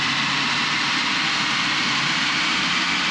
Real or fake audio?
fake